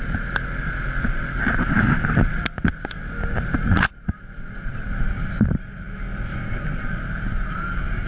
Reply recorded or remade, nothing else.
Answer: recorded